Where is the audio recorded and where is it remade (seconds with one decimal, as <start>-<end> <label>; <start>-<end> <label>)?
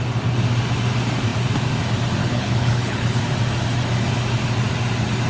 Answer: 0.0-2.2 recorded; 2.2-3.2 remade; 3.2-5.3 recorded